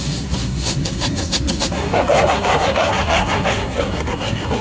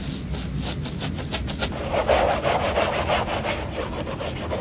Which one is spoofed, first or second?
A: first